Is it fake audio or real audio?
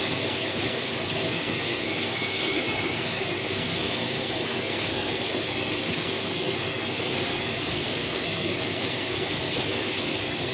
fake